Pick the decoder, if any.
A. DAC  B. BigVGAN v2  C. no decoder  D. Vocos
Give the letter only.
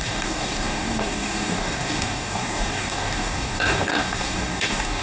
A